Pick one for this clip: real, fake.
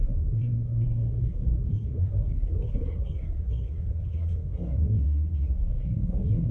fake